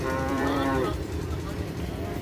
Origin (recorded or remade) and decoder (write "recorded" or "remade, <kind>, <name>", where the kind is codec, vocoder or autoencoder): remade, vocoder, BigVGAN v2